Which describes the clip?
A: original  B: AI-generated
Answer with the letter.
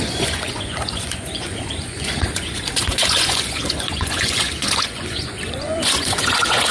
B